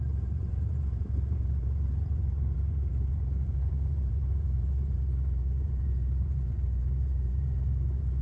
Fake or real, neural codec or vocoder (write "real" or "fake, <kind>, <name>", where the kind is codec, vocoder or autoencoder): fake, vocoder, BigVGAN v2